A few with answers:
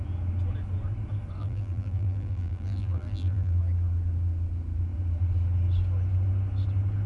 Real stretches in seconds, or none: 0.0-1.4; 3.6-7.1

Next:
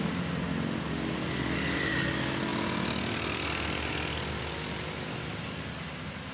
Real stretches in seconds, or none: 0.0-6.3

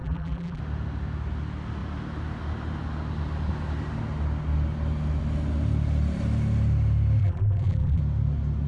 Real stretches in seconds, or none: 0.6-7.2; 8.0-8.7

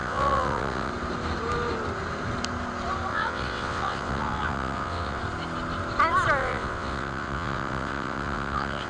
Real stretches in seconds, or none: 0.9-3.1; 5.2-6.4

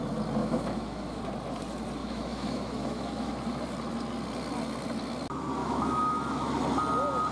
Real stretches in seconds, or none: 0.0-0.4; 1.2-2.0; 3.3-5.6; 6.5-7.3